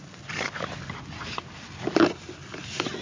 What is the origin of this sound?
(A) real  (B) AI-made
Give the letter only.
A